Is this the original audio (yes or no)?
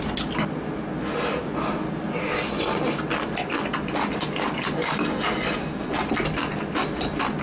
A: yes